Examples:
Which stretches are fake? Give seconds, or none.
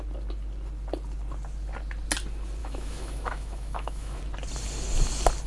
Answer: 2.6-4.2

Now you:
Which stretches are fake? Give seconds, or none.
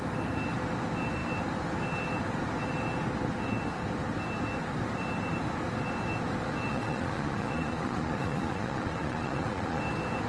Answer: 6.7-9.8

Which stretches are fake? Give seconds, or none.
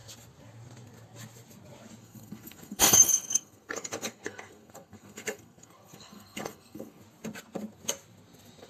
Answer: 2.0-7.0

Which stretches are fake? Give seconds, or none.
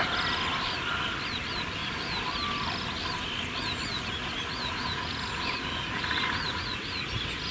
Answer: 3.9-7.5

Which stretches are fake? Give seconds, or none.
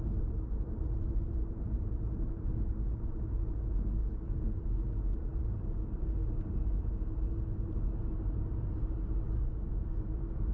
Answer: 0.0-10.5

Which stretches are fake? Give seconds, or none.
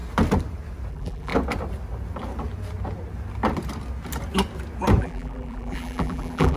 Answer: 0.9-1.3; 5.0-6.6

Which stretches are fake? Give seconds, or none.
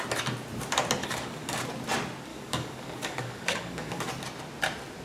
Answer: 1.0-1.6; 2.3-4.1